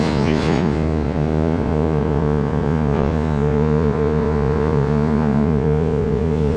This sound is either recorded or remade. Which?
remade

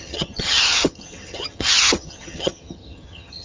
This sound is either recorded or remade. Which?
remade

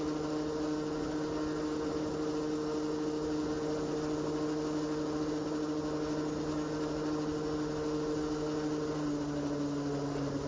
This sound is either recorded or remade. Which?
recorded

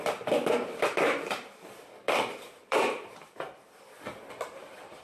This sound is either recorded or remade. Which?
remade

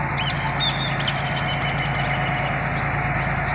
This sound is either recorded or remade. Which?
recorded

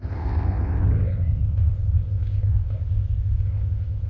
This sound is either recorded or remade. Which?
remade